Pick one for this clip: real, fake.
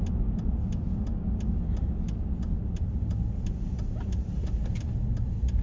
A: real